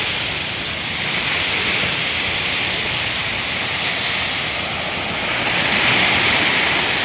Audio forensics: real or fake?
real